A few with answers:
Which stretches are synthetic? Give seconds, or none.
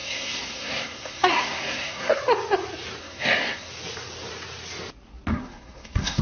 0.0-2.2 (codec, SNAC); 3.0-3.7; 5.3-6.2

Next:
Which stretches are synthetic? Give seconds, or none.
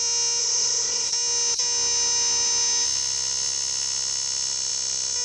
0.4-1.1 (codec, SNAC)